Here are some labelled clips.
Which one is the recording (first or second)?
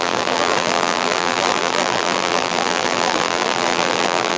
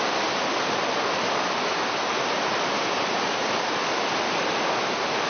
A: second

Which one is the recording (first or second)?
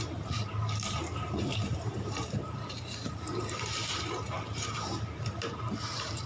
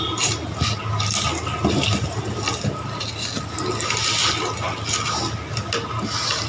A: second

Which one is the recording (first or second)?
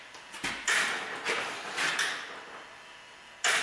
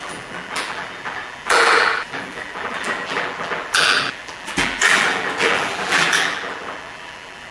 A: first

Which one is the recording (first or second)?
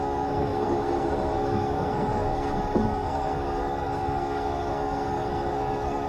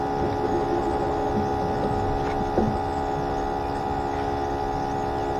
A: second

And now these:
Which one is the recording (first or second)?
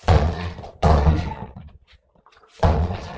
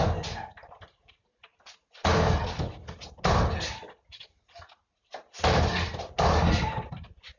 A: second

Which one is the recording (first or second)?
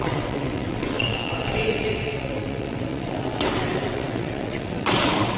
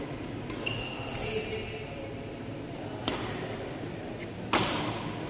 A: second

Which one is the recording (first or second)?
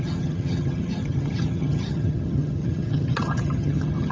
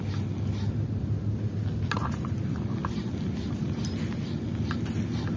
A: second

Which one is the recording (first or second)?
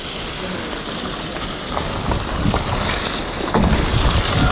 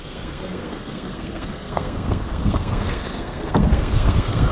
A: first